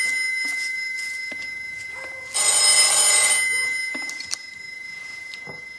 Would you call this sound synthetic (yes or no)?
no